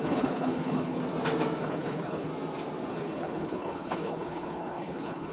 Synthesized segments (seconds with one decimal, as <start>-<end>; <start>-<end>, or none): 0.0-1.0; 1.6-2.3; 2.9-5.3